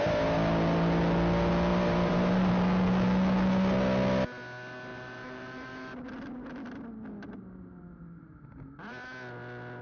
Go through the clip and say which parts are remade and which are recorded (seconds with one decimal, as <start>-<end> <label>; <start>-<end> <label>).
0.0-1.7 recorded; 1.7-2.5 remade; 2.5-4.9 recorded; 4.9-6.5 remade; 6.5-9.8 recorded